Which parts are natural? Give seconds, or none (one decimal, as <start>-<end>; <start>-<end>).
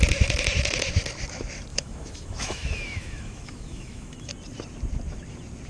0.0-1.7; 4.3-5.7